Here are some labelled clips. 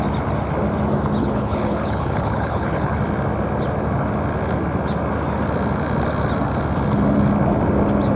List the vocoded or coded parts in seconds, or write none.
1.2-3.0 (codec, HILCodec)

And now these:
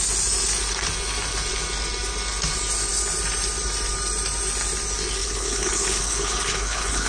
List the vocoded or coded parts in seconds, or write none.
5.2-7.1 (codec, HILCodec)

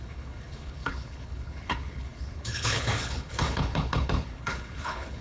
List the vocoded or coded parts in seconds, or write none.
0.0-5.2 (codec, HILCodec)

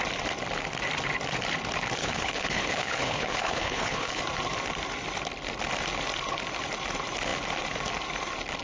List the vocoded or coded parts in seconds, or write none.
2.0-4.2 (codec, HILCodec)

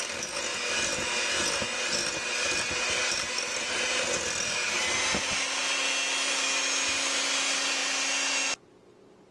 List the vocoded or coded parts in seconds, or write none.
none

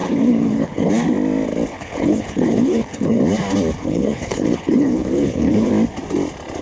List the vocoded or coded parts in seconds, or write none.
0.0-0.9 (codec, HILCodec); 1.7-3.2; 3.8-5.7

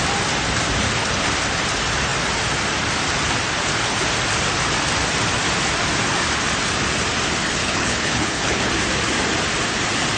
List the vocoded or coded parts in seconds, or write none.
7.6-8.7 (codec, HILCodec)